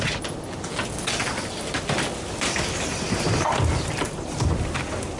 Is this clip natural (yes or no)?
yes